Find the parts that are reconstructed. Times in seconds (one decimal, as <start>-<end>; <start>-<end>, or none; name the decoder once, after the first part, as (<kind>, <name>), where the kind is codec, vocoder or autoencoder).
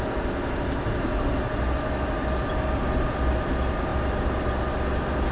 none